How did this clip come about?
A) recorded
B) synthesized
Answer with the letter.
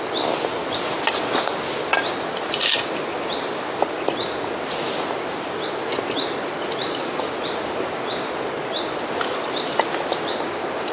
A